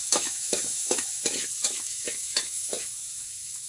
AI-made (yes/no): yes